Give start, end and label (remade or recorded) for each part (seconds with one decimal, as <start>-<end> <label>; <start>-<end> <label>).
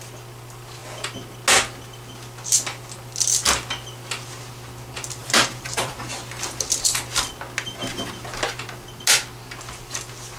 0.0-5.2 recorded; 5.2-6.0 remade; 6.0-10.4 recorded